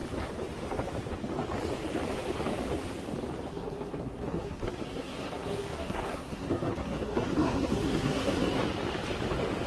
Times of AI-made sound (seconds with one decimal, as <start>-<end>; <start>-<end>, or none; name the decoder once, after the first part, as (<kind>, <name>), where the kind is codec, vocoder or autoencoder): 3.5-8.6 (codec, SNAC)